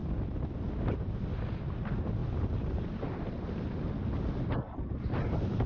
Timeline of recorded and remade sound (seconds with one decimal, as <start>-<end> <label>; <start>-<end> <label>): 0.0-2.2 recorded; 2.2-5.7 remade

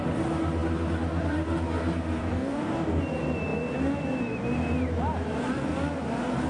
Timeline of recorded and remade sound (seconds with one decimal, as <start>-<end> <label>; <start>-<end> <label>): 0.0-2.2 recorded; 2.2-3.0 remade; 3.0-6.5 recorded

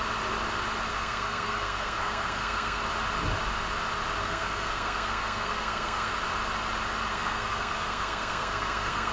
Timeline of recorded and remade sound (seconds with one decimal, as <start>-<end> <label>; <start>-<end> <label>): 0.0-0.9 recorded; 0.9-2.8 remade; 2.8-4.2 recorded; 4.2-6.1 remade; 6.1-7.1 recorded; 7.1-9.1 remade

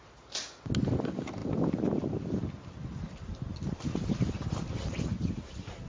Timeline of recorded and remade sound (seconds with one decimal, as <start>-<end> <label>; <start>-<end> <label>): 0.0-5.9 recorded

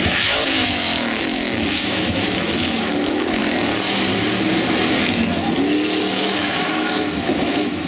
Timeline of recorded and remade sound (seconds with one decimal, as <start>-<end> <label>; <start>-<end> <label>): 0.0-3.4 remade; 3.4-6.1 recorded; 6.1-7.9 remade

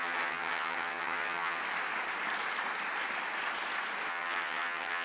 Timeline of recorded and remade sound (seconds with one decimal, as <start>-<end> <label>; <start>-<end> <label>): 0.0-1.6 remade; 1.6-4.1 recorded; 4.1-5.0 remade

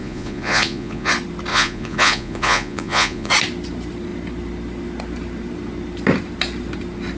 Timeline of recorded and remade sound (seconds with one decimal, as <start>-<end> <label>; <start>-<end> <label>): 0.0-1.1 remade; 1.1-1.5 recorded; 1.5-3.3 remade; 3.3-7.2 recorded